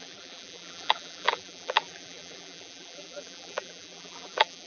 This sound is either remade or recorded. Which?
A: remade